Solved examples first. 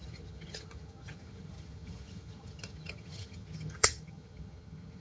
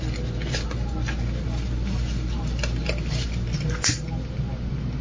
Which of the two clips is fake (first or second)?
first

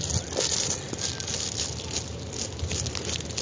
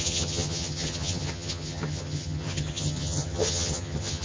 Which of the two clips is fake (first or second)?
second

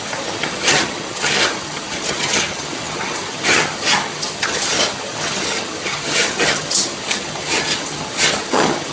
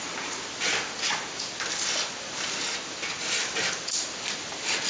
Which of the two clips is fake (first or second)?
first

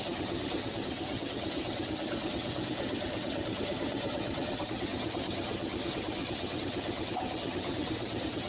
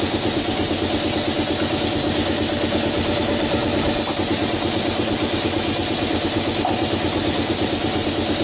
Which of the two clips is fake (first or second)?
first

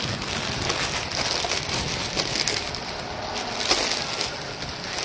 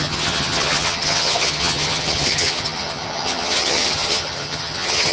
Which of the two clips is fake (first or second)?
second